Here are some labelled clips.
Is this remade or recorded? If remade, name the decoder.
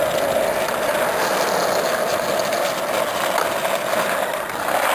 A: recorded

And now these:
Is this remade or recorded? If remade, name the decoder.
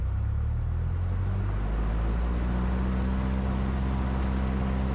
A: recorded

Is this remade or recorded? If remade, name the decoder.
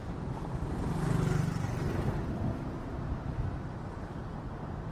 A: recorded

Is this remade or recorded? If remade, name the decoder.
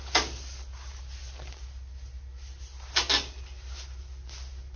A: recorded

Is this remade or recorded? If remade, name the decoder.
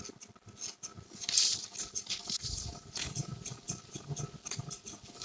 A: recorded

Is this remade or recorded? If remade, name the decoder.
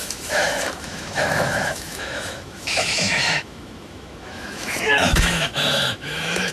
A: remade, autoencoder, DAC-VAE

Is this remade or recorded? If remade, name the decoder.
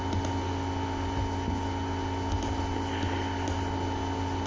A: recorded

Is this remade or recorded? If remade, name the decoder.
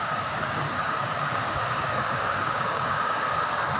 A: remade, codec, DAC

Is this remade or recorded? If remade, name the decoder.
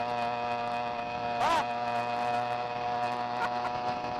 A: recorded